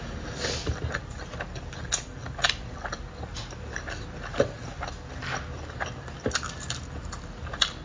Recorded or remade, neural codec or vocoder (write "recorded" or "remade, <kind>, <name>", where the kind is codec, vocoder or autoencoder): recorded